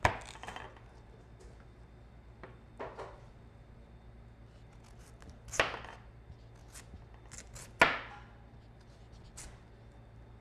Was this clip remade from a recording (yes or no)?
no